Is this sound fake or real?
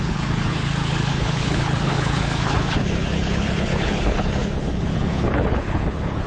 fake